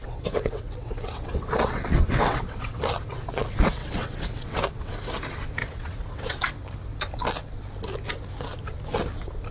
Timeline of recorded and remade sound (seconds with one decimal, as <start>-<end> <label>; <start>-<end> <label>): 0.0-2.8 remade; 2.8-3.8 recorded; 3.8-5.1 remade; 5.1-5.6 recorded; 5.6-6.5 remade; 6.5-9.5 recorded